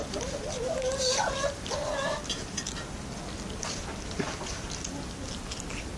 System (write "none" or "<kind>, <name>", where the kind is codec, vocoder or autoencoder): none